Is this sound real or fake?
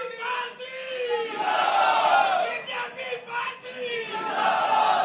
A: real